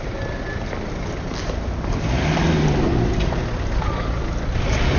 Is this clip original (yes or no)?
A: yes